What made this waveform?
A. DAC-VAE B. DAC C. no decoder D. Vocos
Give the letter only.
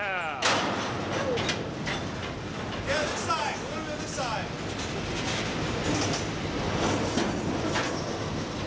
C